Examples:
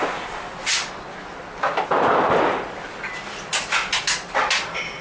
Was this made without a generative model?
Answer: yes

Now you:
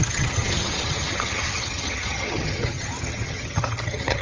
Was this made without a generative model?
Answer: no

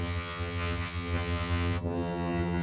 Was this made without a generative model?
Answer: no